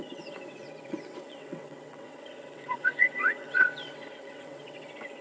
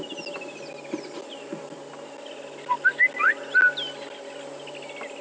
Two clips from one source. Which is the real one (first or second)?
second